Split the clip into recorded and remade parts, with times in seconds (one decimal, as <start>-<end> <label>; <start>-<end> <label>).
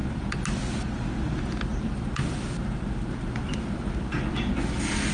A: 0.0-5.1 recorded